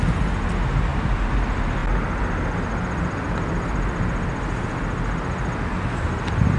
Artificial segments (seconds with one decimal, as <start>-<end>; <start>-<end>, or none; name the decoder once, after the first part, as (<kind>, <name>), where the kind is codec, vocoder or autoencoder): none